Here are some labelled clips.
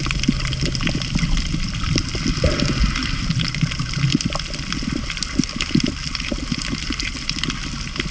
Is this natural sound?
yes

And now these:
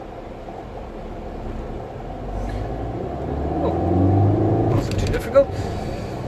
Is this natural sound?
yes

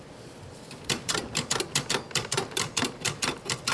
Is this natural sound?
no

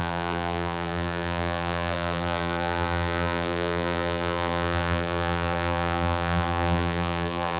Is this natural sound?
no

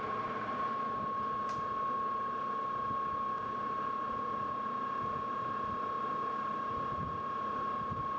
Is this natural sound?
yes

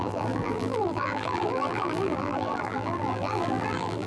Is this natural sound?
no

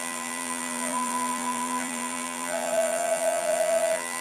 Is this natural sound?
no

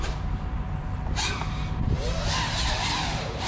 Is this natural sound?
yes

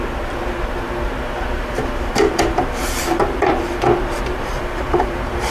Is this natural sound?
no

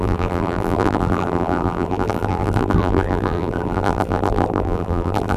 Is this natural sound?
no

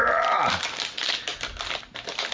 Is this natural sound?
yes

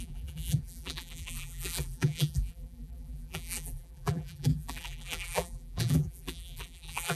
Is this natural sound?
no